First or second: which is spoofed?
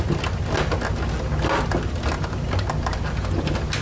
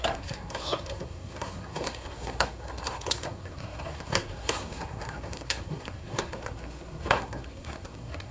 second